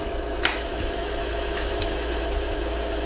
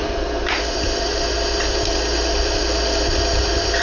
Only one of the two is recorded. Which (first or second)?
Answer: second